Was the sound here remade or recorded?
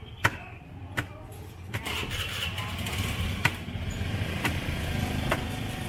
recorded